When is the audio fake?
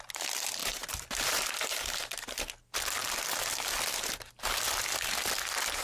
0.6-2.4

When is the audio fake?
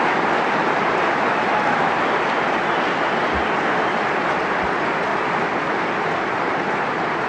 none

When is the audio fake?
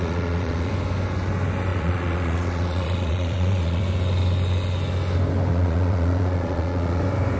0.0-0.7; 1.7-3.8; 5.5-7.0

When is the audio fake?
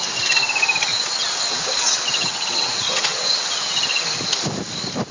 0.9-4.0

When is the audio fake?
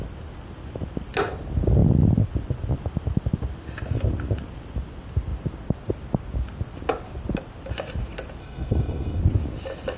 8.4-9.2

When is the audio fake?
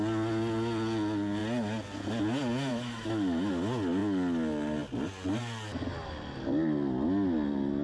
2.7-3.5